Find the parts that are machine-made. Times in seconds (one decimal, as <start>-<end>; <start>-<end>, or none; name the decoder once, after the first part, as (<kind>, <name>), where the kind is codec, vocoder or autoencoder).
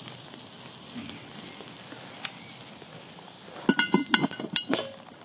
4.2-4.8 (vocoder, BigVGAN v2)